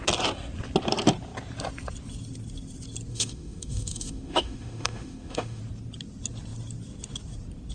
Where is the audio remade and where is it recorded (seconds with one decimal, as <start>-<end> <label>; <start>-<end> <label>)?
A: 0.0-3.1 recorded; 3.1-5.6 remade; 5.6-7.7 recorded